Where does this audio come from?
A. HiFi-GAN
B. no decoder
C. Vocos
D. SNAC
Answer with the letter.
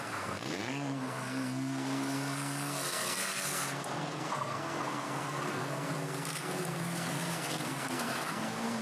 D